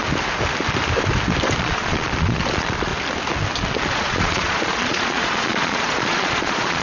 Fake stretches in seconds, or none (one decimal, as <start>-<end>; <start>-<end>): 1.6-2.9; 3.9-6.8